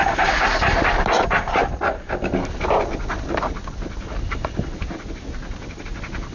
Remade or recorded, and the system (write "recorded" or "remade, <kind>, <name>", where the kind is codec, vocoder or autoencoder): recorded